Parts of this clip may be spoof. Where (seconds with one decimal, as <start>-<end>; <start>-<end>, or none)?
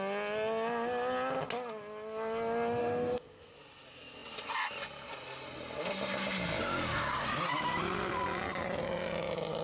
2.8-3.5